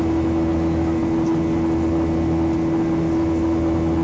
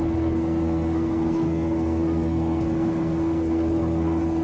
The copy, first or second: second